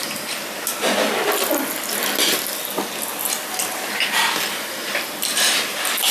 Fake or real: real